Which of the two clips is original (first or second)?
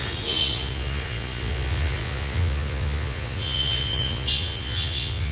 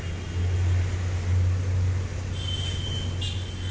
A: second